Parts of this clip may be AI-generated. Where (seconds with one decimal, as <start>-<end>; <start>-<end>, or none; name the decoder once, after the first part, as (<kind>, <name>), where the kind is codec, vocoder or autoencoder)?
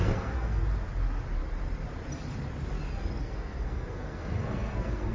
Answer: 0.0-0.6 (codec, SNAC); 3.2-5.1